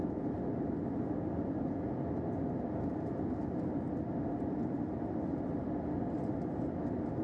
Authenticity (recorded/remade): recorded